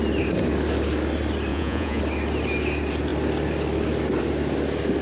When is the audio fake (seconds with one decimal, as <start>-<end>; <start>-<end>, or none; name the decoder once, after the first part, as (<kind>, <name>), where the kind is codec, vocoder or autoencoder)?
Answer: 1.5-2.0 (vocoder, Vocos)